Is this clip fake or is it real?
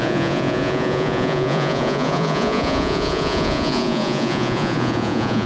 fake